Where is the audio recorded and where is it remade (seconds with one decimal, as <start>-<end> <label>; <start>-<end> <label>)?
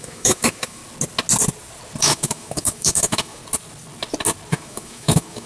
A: 0.0-0.8 remade; 0.8-2.0 recorded; 2.0-3.4 remade; 3.4-4.5 recorded; 4.5-5.5 remade